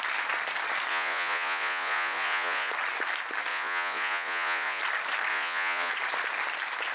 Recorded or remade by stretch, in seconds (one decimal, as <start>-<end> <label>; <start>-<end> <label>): 0.0-0.9 recorded; 0.9-2.7 remade; 2.7-3.5 recorded; 3.5-4.8 remade; 4.8-5.3 recorded; 5.3-5.9 remade; 5.9-6.9 recorded